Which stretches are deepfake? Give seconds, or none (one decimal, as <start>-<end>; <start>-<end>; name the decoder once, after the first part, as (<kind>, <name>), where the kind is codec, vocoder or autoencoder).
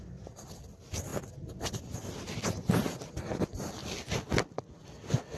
none